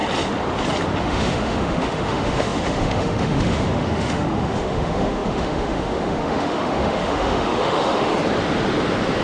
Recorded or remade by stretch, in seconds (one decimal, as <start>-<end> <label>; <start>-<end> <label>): 0.0-1.0 recorded; 1.0-8.1 remade; 8.1-9.2 recorded